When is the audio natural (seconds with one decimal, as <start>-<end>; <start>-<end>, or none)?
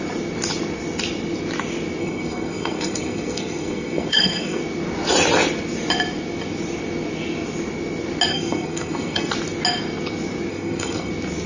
0.0-2.0; 4.6-8.3; 9.3-10.5; 11.1-11.5